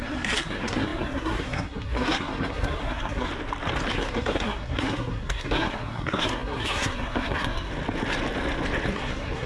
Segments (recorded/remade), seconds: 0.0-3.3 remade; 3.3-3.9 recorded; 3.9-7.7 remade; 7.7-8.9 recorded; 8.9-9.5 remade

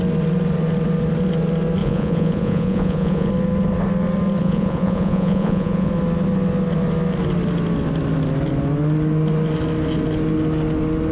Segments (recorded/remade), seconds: 0.0-1.8 recorded; 1.8-3.3 remade; 3.3-4.4 recorded; 4.4-5.9 remade; 5.9-11.1 recorded

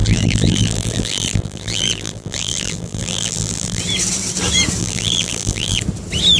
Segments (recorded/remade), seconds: 0.0-3.8 remade; 3.8-4.8 recorded; 4.8-5.8 remade; 5.8-6.4 recorded

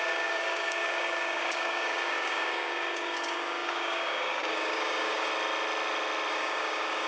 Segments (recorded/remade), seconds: 0.0-5.3 remade; 5.3-6.3 recorded; 6.3-7.1 remade

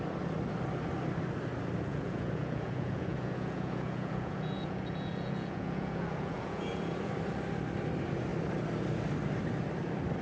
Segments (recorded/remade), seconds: 0.0-1.9 recorded; 1.9-7.1 remade; 7.1-10.2 recorded

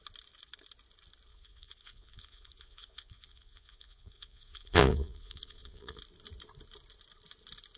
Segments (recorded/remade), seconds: 0.0-1.3 recorded; 1.3-6.0 remade; 6.0-7.8 recorded

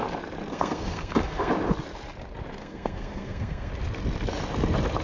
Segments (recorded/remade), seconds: 0.0-0.5 recorded; 0.5-1.5 remade; 1.5-2.6 recorded; 2.6-3.7 remade; 3.7-5.0 recorded

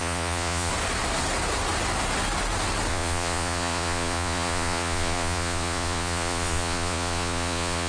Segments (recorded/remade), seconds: 0.0-0.7 remade; 0.7-2.9 recorded; 2.9-7.9 remade